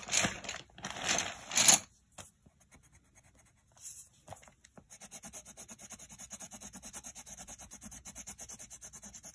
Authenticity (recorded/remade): recorded